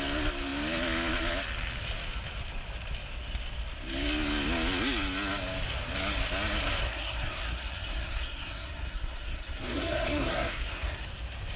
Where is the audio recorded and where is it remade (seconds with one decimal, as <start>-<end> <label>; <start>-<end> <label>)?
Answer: 0.0-6.9 recorded; 6.9-11.0 remade; 11.0-11.6 recorded